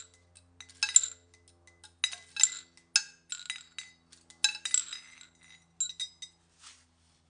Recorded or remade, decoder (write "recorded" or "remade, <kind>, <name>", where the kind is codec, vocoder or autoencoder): recorded